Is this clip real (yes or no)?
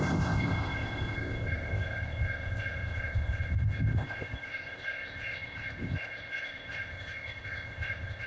no